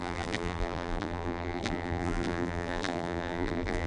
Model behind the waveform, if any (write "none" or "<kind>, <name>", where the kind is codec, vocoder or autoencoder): vocoder, BigVGAN v2